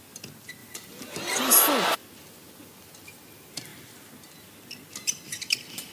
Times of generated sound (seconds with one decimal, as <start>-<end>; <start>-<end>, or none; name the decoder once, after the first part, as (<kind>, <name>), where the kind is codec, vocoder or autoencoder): none